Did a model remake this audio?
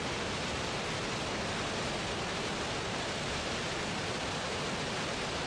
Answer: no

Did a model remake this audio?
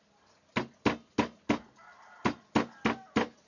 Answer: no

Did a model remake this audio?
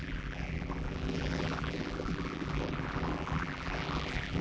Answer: yes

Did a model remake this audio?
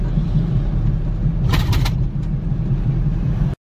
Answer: no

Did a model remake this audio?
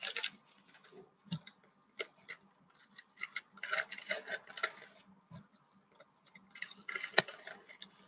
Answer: no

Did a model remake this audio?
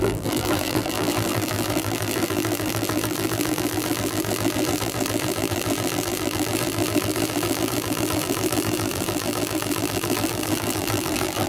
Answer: yes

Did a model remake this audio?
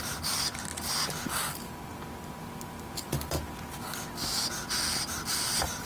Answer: no